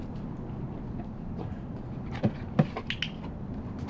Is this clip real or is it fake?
real